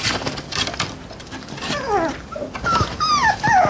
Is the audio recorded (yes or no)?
no